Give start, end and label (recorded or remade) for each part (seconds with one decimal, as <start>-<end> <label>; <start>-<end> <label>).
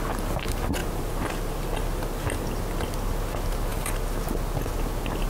0.0-0.8 recorded; 0.8-1.5 remade; 1.5-5.3 recorded